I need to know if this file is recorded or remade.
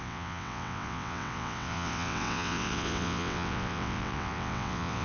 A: remade